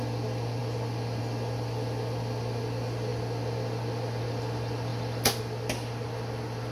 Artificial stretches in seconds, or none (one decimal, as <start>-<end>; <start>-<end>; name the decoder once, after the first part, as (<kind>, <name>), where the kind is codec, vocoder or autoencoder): none